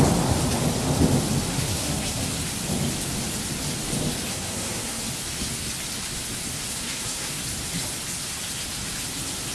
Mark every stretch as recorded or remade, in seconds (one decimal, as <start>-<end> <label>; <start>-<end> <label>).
0.0-1.5 recorded; 1.5-2.2 remade; 2.2-4.3 recorded; 4.3-5.1 remade; 5.1-6.7 recorded; 6.7-7.4 remade; 7.4-9.5 recorded